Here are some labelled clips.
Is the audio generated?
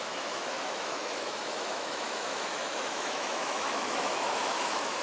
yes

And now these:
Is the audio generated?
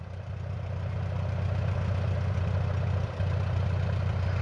no